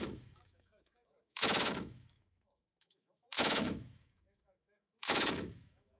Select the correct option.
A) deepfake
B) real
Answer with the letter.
A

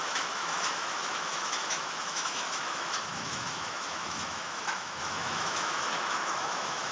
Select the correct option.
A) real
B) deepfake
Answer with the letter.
B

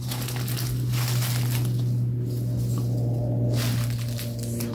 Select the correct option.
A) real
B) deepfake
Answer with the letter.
A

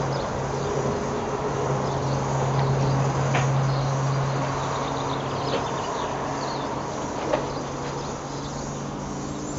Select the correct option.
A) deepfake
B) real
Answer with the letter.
B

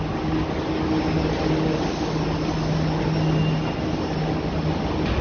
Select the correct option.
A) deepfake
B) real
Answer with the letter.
B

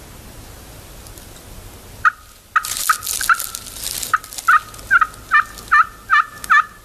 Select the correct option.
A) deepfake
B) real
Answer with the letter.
B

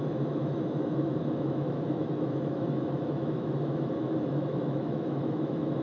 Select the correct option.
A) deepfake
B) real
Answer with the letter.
A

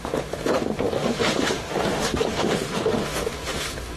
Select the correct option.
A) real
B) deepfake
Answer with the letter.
B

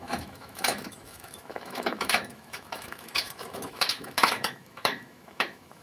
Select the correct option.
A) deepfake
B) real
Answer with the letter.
A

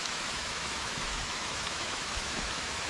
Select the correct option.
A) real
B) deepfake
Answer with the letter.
B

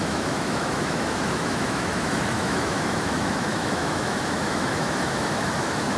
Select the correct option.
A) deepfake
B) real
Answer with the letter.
A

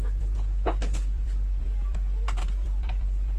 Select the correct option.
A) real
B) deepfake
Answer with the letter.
A